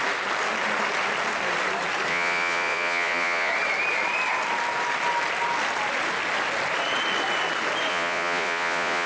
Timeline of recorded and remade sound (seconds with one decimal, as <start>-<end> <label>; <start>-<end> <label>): 0.0-2.1 recorded; 2.1-3.5 remade; 3.5-7.9 recorded; 7.9-9.1 remade